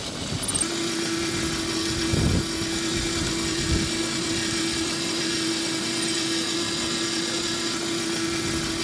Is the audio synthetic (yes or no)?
no